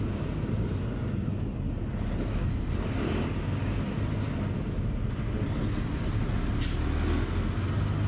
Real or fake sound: real